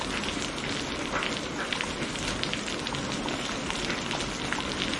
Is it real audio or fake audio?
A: real